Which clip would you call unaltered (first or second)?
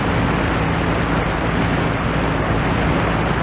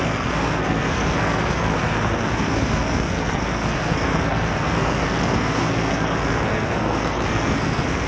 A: first